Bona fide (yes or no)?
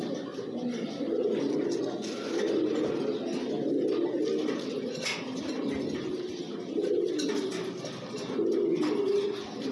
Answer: yes